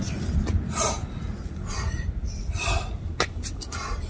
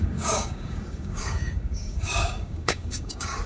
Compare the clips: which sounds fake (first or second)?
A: second